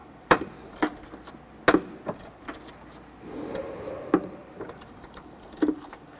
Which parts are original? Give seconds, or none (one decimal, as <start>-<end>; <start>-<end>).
0.5-4.4